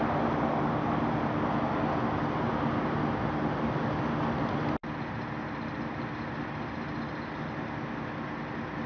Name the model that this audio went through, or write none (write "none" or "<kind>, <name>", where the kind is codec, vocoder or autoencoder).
none